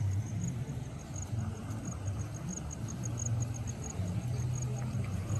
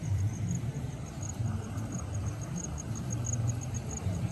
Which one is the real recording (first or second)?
first